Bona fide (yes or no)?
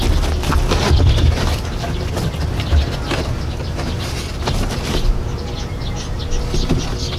yes